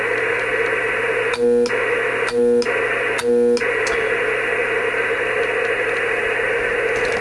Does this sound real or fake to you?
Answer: real